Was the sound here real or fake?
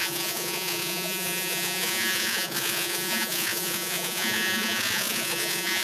fake